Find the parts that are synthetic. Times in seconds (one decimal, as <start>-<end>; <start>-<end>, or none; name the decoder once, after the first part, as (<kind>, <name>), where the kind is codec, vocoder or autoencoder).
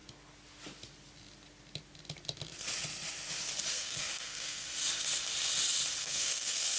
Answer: 3.7-4.7 (codec, SNAC); 6.0-6.8